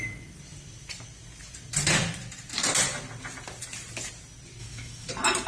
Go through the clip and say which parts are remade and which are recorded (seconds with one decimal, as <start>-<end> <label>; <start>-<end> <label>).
0.0-4.6 recorded; 4.6-5.1 remade; 5.1-5.5 recorded